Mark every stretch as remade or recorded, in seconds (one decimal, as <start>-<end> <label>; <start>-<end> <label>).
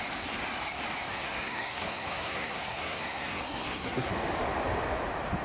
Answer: 0.0-1.1 recorded; 1.1-4.1 remade; 4.1-5.4 recorded